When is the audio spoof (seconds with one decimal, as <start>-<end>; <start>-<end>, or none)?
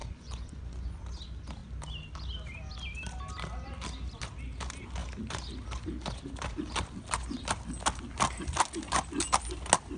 0.0-1.0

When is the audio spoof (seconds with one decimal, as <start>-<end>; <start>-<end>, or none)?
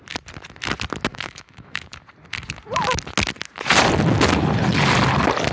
1.1-2.0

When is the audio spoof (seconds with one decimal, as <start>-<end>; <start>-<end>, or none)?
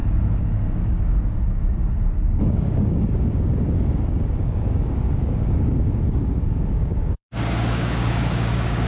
0.0-8.9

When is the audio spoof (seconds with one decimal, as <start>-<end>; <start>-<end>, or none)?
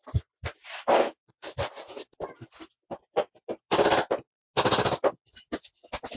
none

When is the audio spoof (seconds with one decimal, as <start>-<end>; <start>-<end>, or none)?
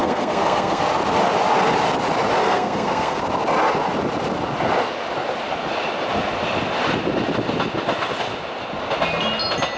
0.0-0.8; 2.4-3.2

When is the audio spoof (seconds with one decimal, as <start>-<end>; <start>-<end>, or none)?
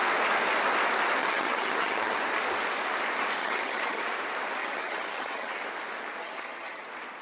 1.2-2.2; 3.4-4.0; 4.6-5.5; 6.2-6.8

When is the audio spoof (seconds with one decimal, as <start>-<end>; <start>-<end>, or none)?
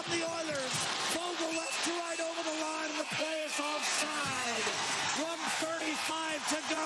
2.9-6.1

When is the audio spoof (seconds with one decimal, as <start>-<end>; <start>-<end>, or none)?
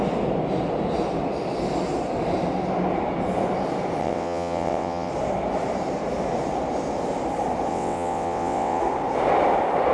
4.0-5.1; 7.7-8.8